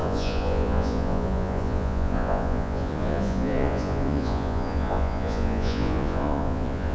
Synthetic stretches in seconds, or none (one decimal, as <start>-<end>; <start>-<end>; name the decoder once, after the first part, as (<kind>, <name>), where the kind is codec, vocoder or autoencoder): 0.0-6.9 (vocoder, Vocos)